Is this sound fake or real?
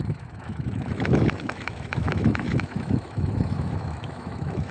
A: fake